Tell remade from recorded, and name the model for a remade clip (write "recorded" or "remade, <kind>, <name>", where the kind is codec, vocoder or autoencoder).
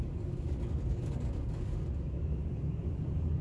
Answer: remade, codec, DAC